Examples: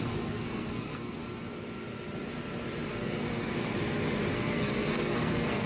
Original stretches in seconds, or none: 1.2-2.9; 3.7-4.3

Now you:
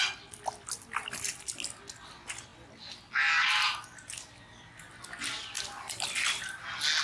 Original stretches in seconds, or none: 0.0-7.0

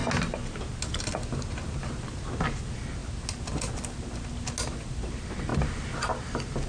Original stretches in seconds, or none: 0.0-6.7

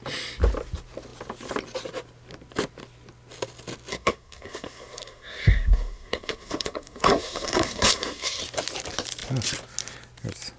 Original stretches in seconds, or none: 0.0-3.9; 8.4-10.6

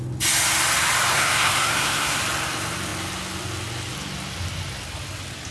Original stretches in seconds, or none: 0.0-1.1; 2.2-5.5

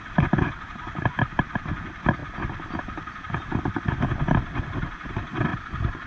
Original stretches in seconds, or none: 0.0-6.1